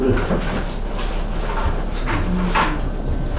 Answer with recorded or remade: recorded